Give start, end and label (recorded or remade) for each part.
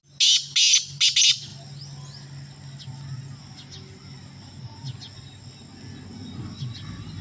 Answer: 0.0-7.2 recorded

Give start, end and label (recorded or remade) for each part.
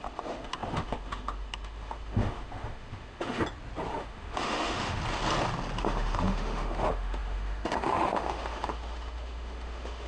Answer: 0.0-3.4 remade; 3.4-3.9 recorded; 3.9-5.0 remade; 5.0-5.8 recorded; 5.8-10.1 remade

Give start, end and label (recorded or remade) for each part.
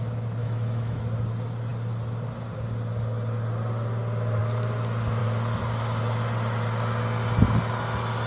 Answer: 0.0-0.4 recorded; 0.4-1.0 remade; 1.0-8.3 recorded